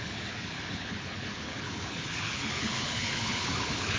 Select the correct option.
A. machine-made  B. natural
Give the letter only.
A